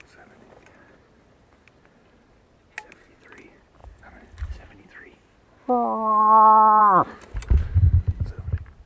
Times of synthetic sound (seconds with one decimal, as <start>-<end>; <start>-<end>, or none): none